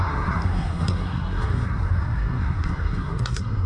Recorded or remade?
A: remade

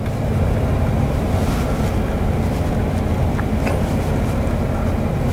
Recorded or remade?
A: recorded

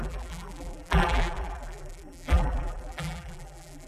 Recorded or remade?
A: remade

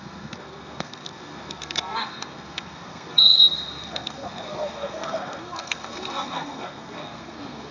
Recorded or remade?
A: remade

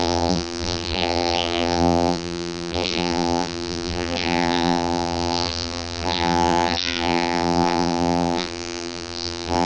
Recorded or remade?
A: remade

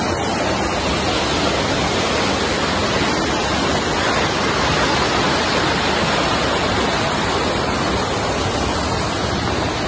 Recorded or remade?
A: recorded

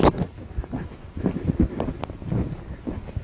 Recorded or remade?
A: recorded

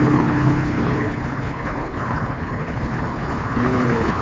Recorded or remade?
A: remade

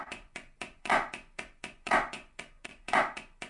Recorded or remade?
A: remade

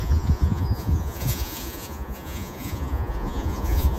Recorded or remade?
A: remade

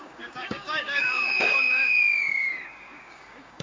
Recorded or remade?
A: remade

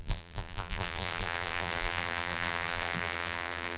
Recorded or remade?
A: remade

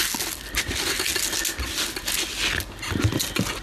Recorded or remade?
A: recorded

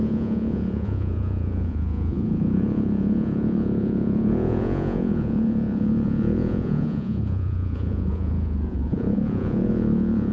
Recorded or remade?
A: remade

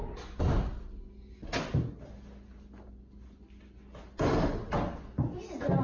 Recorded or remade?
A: recorded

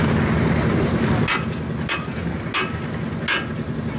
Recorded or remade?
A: recorded